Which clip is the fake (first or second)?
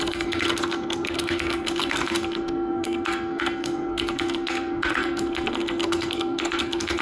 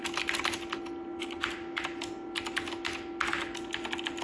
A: first